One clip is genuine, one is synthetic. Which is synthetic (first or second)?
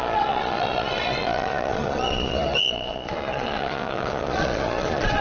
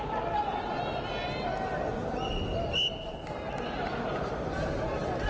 first